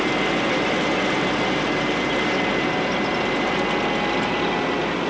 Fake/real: real